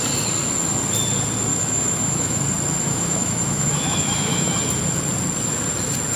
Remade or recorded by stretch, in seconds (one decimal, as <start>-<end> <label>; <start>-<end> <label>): 0.0-1.5 recorded; 1.5-2.4 remade; 2.4-2.8 recorded; 2.8-4.5 remade; 4.5-6.2 recorded

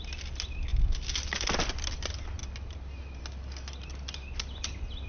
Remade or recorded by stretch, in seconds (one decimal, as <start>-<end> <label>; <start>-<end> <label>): 0.0-5.1 recorded